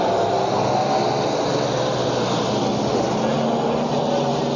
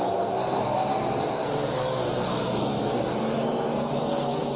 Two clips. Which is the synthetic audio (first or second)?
second